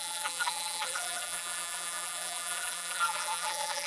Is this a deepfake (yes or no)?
yes